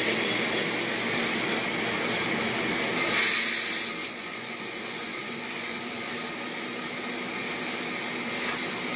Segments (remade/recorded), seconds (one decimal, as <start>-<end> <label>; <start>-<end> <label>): 0.0-4.0 recorded; 4.0-6.1 remade; 6.1-9.0 recorded